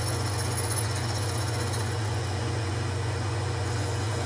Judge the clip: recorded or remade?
remade